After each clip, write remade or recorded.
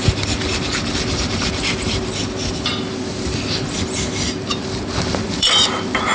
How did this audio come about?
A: remade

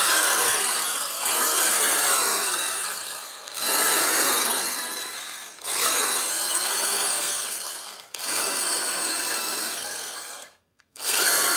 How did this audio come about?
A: remade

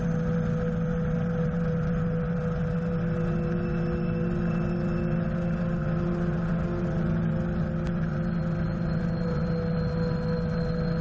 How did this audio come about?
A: recorded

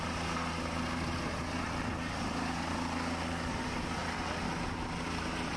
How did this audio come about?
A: recorded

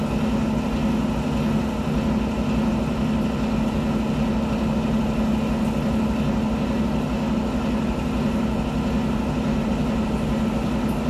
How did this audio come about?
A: recorded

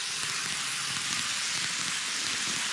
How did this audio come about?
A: recorded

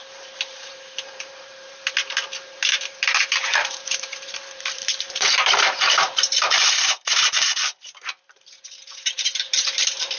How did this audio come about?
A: remade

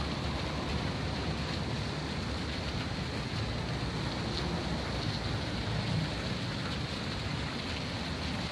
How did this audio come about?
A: recorded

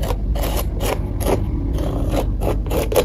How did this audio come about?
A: recorded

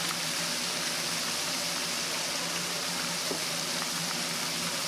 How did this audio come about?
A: recorded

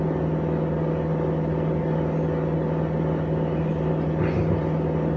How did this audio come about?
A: recorded